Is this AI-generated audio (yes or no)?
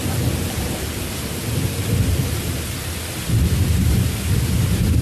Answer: no